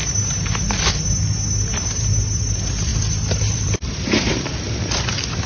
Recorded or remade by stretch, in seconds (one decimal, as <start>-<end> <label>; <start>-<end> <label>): 0.0-2.9 recorded; 2.9-5.5 remade